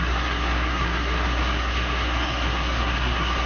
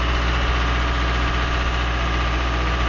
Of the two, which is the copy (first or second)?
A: first